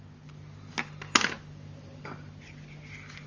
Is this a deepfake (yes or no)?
no